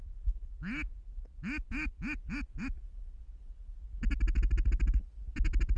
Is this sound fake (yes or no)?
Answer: no